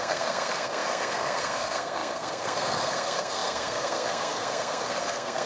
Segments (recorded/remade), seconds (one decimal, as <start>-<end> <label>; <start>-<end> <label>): 0.0-5.5 remade